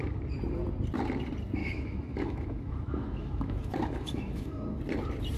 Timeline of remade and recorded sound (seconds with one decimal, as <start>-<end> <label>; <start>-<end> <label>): 0.0-1.6 recorded; 1.6-4.8 remade; 4.8-5.4 recorded